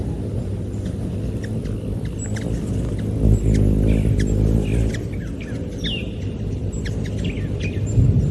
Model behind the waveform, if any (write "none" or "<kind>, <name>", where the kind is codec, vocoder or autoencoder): none